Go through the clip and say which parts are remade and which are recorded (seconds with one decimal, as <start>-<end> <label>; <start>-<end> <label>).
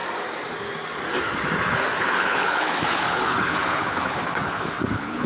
0.0-2.0 recorded; 2.0-5.3 remade